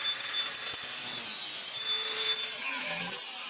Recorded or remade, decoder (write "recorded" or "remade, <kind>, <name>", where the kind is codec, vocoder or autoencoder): recorded